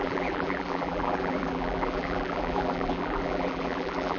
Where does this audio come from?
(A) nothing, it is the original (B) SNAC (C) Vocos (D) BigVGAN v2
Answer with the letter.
D